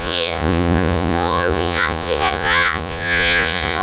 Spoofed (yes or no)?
yes